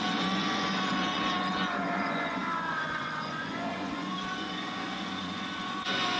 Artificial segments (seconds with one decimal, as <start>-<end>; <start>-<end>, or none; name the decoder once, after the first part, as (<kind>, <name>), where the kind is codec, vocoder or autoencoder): 0.0-6.2 (vocoder, Vocos)